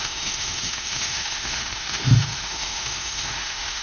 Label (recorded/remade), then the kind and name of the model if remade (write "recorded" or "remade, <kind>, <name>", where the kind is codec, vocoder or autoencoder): remade, autoencoder, DAC-VAE